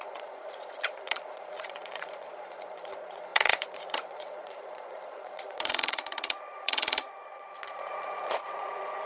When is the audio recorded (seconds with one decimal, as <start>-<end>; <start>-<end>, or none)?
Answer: none